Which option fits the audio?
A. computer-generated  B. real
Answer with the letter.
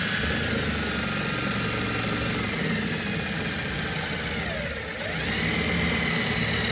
B